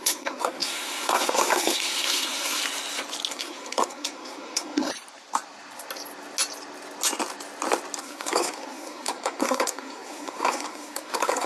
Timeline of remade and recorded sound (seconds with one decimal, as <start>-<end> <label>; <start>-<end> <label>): 0.0-2.6 remade; 2.6-3.3 recorded; 3.3-4.9 remade; 4.9-8.0 recorded; 8.0-11.5 remade

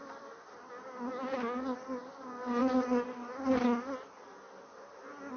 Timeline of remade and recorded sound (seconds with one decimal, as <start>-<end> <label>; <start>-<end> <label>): 0.0-5.4 recorded

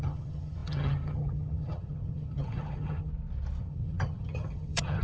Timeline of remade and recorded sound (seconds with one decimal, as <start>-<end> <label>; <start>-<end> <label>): 0.0-3.1 remade; 3.1-3.6 recorded; 3.6-5.0 remade

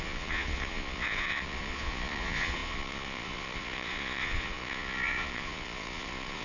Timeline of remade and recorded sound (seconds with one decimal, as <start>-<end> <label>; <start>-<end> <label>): 0.0-6.4 remade

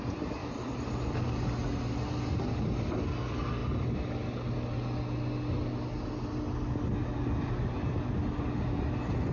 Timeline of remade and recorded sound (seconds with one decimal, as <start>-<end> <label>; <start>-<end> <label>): 0.0-9.3 recorded

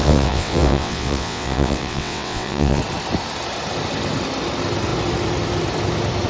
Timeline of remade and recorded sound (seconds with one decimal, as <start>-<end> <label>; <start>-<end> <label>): 0.0-2.8 remade; 2.8-6.3 recorded

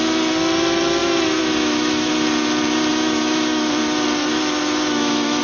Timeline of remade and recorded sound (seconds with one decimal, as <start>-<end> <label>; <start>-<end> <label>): 0.0-1.0 recorded; 1.0-2.1 remade; 2.1-2.9 recorded; 2.9-3.7 remade; 3.7-4.3 recorded; 4.3-5.4 remade